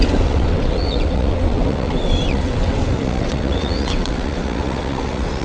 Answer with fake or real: fake